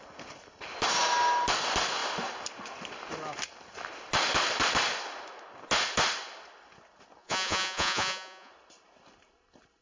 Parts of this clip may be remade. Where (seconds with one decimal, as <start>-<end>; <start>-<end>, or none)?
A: 7.2-8.5